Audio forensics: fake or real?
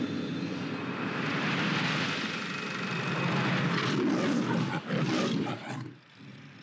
real